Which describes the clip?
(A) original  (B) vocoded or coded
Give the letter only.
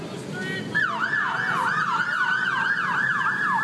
A